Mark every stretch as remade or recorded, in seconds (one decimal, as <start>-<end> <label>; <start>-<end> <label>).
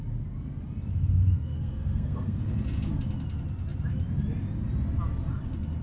0.0-0.9 recorded; 0.9-2.4 remade; 2.4-5.8 recorded